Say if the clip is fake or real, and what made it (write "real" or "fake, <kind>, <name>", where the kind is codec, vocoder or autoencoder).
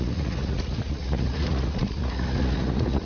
fake, vocoder, Vocos